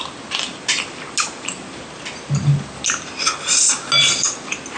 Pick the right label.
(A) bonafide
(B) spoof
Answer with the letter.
A